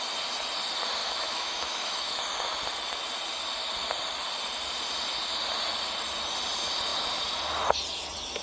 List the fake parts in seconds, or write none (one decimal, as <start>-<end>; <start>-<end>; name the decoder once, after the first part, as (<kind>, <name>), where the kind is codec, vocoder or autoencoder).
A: 1.0-2.2 (autoencoder, DAC-VAE)